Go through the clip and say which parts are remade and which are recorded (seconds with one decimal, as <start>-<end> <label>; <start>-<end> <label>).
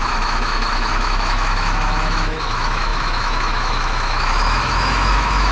0.0-5.5 remade